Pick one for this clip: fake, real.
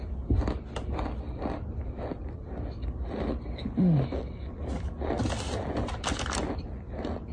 real